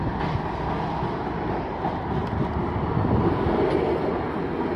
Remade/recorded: recorded